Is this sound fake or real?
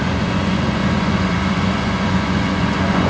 fake